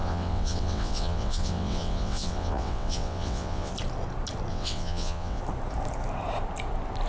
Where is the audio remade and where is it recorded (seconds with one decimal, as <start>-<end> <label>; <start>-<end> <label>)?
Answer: 0.0-3.7 remade; 3.7-4.5 recorded; 4.5-5.4 remade; 5.4-7.1 recorded